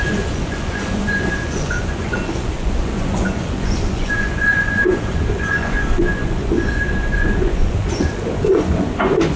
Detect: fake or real fake